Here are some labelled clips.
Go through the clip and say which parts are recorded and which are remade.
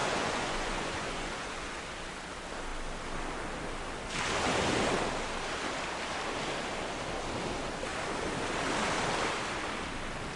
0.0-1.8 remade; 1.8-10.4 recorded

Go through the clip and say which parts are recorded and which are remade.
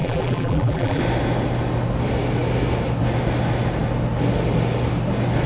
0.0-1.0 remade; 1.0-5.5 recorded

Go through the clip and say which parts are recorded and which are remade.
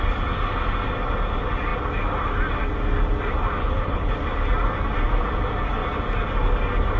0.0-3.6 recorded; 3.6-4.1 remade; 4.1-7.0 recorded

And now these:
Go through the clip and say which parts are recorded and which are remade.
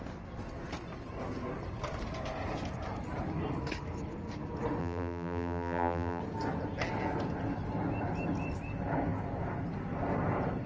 0.0-4.8 recorded; 4.8-6.2 remade; 6.2-10.7 recorded